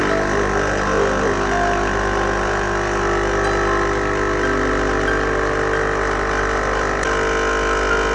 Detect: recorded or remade recorded